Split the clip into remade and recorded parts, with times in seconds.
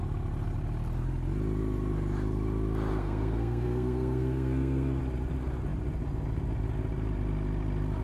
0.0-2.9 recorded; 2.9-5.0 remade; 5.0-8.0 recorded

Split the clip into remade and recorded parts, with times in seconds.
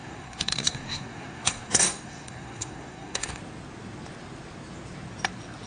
0.0-3.4 remade; 3.4-5.7 recorded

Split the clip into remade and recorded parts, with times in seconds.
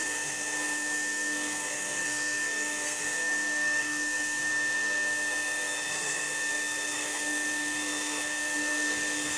0.0-9.4 remade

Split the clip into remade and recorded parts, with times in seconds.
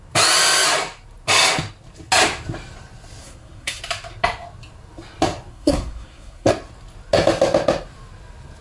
0.0-3.2 recorded; 3.2-3.8 remade; 3.8-5.5 recorded; 5.5-6.5 remade; 6.5-8.6 recorded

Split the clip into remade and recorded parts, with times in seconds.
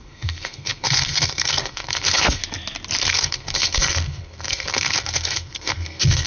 0.0-2.4 remade; 2.4-3.0 recorded; 3.0-6.3 remade